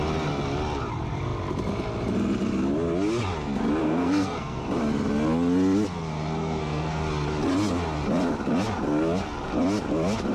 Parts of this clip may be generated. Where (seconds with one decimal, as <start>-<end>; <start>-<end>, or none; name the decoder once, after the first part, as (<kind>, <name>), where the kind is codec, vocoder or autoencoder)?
3.8-4.6 (codec, SNAC); 6.4-7.0